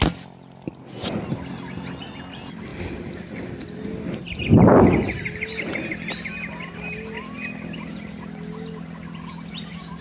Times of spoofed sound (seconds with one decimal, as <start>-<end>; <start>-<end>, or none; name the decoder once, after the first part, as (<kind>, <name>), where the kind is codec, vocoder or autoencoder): 2.7-6.5 (vocoder, BigVGAN v2)